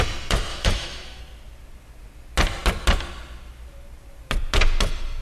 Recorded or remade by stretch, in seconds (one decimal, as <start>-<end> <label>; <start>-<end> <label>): 0.0-0.5 recorded; 0.5-1.2 remade; 1.2-5.2 recorded